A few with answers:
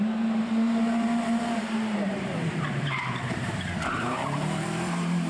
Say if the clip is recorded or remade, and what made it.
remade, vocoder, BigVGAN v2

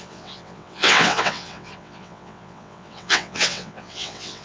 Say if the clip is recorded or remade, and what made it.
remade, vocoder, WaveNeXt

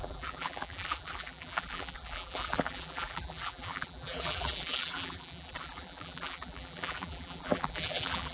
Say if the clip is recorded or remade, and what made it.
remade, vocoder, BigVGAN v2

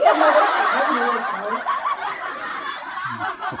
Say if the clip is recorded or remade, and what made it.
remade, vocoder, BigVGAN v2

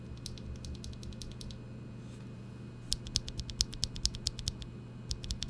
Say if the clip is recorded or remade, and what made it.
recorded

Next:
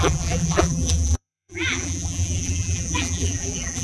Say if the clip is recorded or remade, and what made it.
remade, vocoder, BigVGAN v2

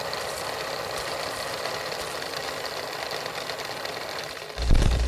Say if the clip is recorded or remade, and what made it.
recorded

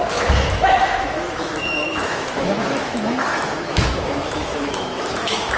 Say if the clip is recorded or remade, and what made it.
remade, autoencoder, DAC-VAE